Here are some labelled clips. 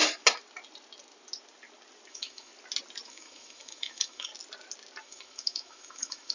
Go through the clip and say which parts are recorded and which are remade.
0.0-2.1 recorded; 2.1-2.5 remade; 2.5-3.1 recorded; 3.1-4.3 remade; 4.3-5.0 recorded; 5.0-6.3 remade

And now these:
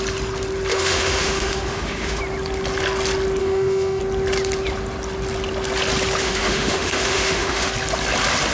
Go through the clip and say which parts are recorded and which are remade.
0.0-0.7 recorded; 0.7-2.2 remade; 2.2-3.4 recorded; 3.4-4.0 remade; 4.0-6.2 recorded; 6.2-7.7 remade; 7.7-8.5 recorded

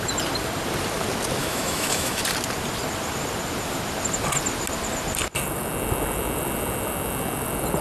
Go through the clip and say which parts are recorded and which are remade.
0.0-1.4 recorded; 1.4-2.2 remade; 2.2-7.8 recorded

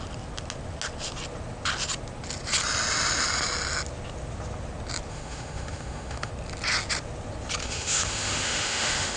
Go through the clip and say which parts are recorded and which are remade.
0.0-5.1 recorded; 5.1-6.3 remade; 6.3-7.6 recorded; 7.6-9.2 remade

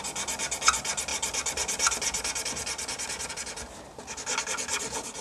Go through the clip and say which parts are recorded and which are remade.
0.0-5.2 recorded